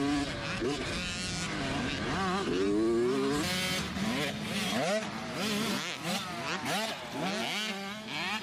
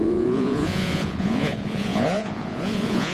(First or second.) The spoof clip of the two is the second